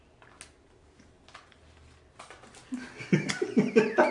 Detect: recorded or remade recorded